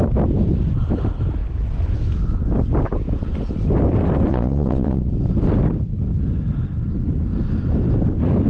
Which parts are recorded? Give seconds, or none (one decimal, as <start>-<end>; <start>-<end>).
0.0-4.3; 5.1-8.5